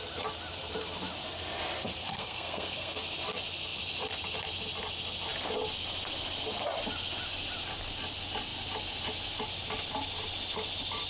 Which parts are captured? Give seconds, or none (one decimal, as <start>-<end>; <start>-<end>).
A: 0.0-2.1; 3.0-11.1